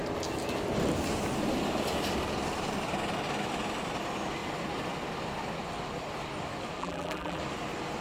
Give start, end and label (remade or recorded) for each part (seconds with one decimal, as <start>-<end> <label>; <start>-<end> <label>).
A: 0.0-6.8 recorded; 6.8-7.4 remade; 7.4-8.0 recorded